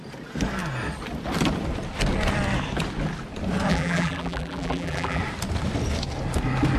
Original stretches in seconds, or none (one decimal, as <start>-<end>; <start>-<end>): 0.0-3.7; 5.2-6.8